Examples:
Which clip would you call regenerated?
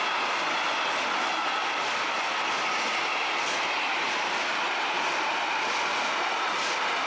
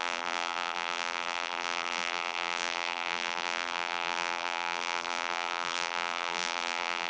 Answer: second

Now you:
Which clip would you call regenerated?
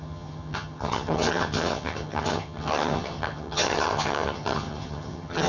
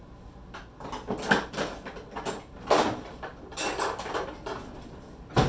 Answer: first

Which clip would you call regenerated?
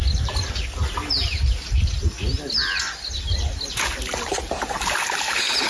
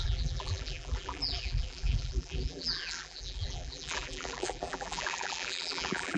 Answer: second